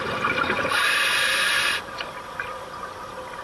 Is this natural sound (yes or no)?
yes